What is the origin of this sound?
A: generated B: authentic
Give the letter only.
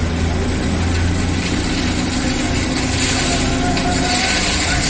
B